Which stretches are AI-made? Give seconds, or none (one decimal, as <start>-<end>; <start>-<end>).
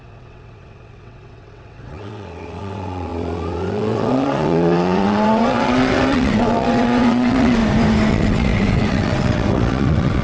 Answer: 0.0-7.6; 8.1-10.2